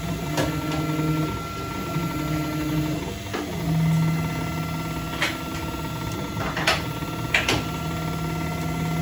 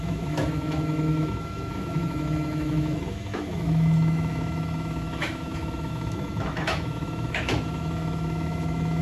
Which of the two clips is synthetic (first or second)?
second